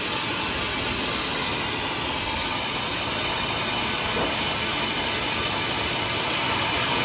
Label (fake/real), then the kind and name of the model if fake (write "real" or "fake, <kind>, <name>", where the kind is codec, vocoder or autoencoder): real